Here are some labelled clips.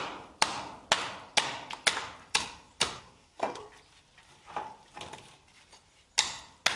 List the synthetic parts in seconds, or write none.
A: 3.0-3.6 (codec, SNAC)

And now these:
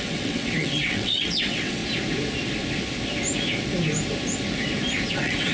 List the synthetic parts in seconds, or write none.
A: 0.0-1.8 (vocoder, WaveNeXt); 5.1-5.5

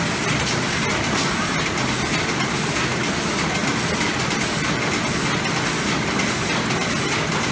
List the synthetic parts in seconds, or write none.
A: none

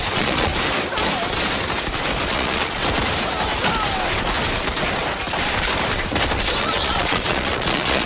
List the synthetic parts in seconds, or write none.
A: 0.0-0.5 (vocoder, Vocos); 2.3-2.8; 6.6-8.1

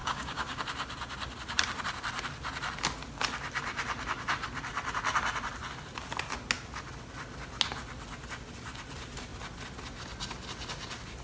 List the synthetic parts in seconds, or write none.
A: 0.0-0.6 (codec, DAC)